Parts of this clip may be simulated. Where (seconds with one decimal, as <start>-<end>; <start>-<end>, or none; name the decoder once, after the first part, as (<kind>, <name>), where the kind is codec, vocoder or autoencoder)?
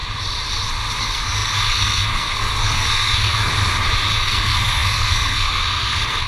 1.0-3.5 (codec, SNAC); 4.1-6.3